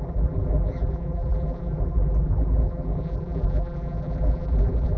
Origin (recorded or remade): remade